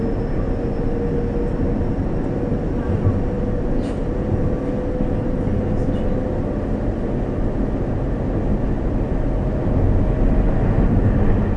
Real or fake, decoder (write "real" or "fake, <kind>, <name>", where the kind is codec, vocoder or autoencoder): real